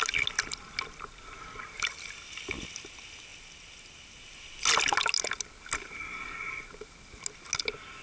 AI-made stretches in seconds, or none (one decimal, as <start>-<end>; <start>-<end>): none